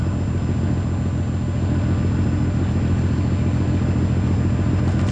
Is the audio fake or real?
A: real